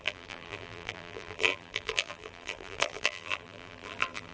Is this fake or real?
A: fake